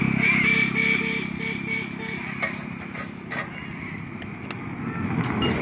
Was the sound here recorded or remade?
recorded